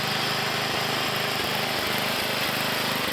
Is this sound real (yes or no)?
yes